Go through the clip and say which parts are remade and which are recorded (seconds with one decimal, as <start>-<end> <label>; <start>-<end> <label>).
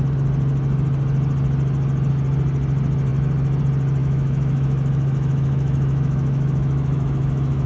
0.0-4.0 recorded; 4.0-7.7 remade